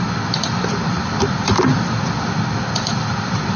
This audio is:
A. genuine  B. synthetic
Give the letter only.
A